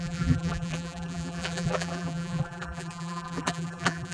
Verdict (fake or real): fake